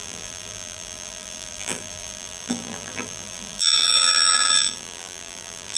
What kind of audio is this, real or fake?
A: fake